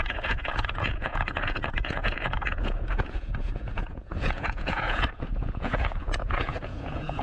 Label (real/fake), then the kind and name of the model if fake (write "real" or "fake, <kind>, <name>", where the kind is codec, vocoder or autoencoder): fake, vocoder, Vocos